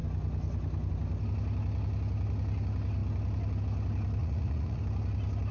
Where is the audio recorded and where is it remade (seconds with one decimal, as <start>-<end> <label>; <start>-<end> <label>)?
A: 0.0-4.2 recorded; 4.2-4.8 remade; 4.8-5.5 recorded